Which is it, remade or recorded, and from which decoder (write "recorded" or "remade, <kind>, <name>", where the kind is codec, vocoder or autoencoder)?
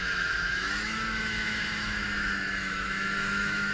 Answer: remade, autoencoder, DAC-VAE